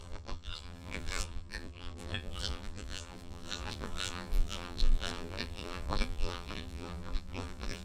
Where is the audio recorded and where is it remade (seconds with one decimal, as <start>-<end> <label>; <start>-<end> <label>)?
0.0-7.8 remade